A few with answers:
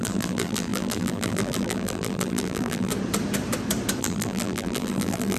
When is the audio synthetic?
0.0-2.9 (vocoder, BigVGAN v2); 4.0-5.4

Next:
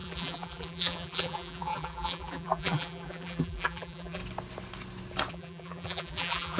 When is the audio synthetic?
0.0-4.2 (vocoder, BigVGAN v2); 5.3-6.6